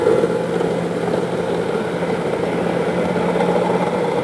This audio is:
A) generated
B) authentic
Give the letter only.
B